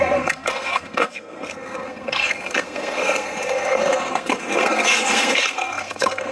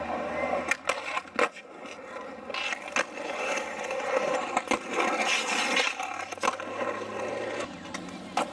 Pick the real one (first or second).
second